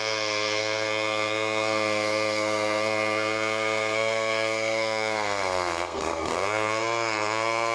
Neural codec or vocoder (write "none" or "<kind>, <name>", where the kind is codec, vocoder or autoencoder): codec, SNAC